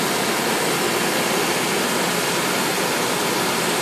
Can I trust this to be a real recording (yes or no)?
yes